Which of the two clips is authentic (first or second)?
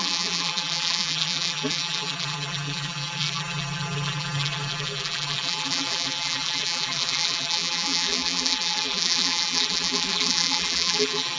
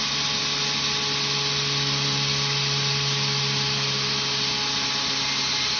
second